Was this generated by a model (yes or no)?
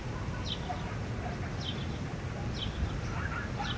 no